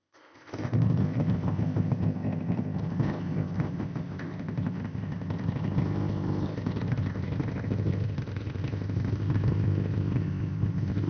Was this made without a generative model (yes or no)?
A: no